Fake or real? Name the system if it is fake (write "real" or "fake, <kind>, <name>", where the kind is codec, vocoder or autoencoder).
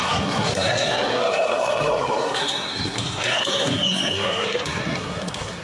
fake, codec, SNAC